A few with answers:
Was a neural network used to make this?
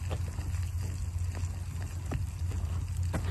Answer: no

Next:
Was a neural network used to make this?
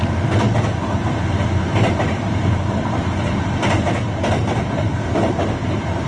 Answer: no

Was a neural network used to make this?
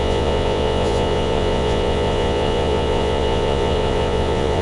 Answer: yes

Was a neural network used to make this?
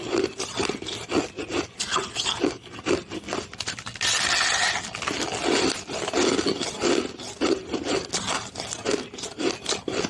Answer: no